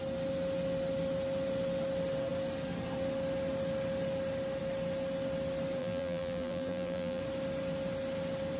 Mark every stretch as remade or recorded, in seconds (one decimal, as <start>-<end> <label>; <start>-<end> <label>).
0.0-5.8 recorded; 5.8-7.2 remade; 7.2-8.6 recorded